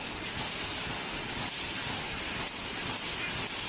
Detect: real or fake real